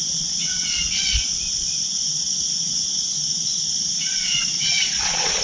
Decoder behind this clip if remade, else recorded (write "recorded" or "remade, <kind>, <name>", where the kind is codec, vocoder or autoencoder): remade, vocoder, Vocos